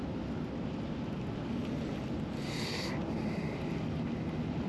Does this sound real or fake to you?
real